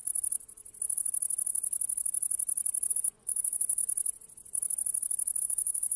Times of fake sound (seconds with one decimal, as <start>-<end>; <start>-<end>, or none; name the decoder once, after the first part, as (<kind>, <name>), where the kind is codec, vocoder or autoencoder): 2.9-3.8 (vocoder, Vocos); 5.4-6.0